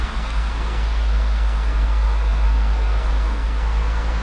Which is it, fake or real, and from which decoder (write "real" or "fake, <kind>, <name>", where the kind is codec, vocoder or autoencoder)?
fake, codec, SNAC